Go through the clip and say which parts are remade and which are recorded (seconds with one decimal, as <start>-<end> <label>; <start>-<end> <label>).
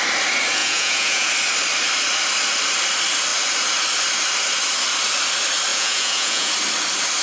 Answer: 0.0-0.6 recorded; 0.6-1.3 remade; 1.3-5.7 recorded; 5.7-6.5 remade; 6.5-7.2 recorded